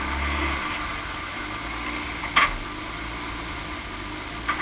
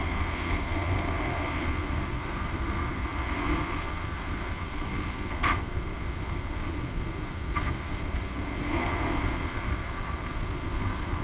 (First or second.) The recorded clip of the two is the first